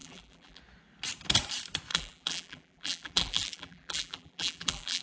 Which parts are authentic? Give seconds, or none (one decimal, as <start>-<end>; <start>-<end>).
0.6-1.9